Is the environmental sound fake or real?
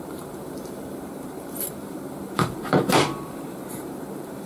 fake